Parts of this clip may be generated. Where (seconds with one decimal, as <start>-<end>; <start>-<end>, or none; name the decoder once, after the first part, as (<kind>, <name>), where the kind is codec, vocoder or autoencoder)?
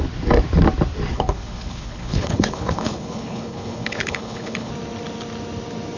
1.1-4.7 (codec, HILCodec)